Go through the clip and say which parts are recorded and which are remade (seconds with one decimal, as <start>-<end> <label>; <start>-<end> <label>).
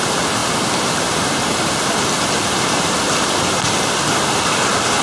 0.0-5.0 recorded